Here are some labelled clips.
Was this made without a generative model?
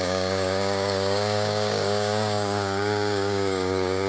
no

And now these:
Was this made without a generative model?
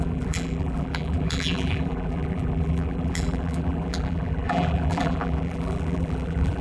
no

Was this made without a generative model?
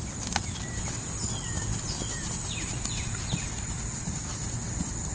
yes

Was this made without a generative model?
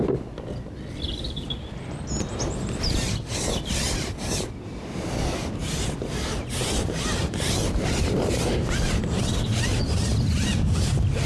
yes